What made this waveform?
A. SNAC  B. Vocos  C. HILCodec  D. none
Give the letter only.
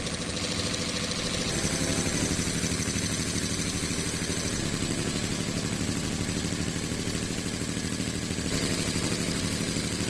D